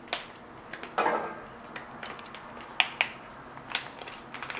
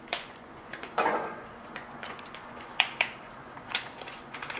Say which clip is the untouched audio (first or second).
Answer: first